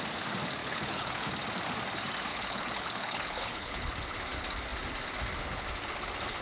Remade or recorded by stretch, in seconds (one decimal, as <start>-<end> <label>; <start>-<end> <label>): 0.0-0.6 recorded; 0.6-1.3 remade; 1.3-2.3 recorded; 2.3-3.9 remade; 3.9-6.4 recorded